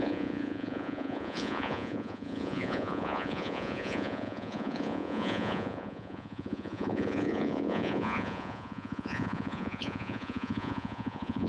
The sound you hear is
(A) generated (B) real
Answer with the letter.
A